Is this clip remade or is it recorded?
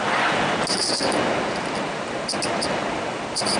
recorded